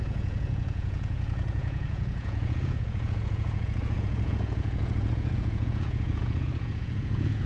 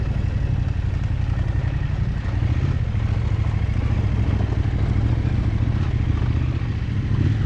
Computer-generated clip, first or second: first